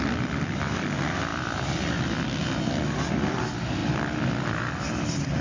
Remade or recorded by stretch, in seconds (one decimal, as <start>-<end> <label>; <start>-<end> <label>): 0.0-5.4 recorded